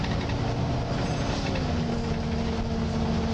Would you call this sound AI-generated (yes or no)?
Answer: no